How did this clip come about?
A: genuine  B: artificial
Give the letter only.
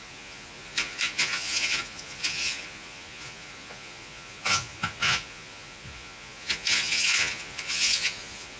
B